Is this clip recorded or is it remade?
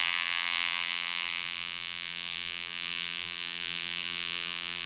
remade